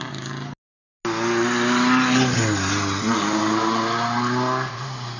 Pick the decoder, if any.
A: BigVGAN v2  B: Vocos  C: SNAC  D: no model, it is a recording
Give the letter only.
D